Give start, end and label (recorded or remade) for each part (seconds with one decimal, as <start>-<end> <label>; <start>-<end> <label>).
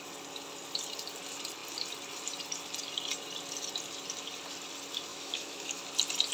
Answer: 0.0-5.1 recorded; 5.1-5.8 remade; 5.8-6.3 recorded